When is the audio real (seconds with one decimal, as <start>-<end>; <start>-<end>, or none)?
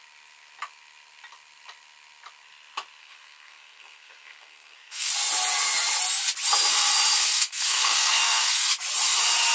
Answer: 0.0-3.0; 5.1-7.2; 8.7-9.5